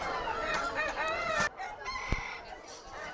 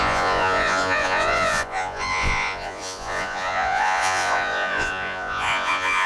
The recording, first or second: first